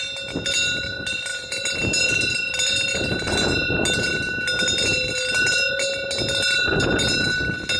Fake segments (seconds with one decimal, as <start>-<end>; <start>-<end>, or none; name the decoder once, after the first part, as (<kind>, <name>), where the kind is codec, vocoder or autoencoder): none